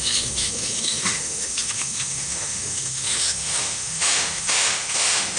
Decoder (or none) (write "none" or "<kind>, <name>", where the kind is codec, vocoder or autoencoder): autoencoder, DAC-VAE